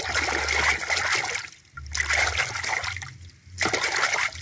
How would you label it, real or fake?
real